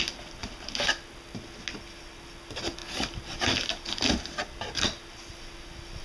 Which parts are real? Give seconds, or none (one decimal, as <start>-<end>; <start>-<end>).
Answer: 0.0-6.0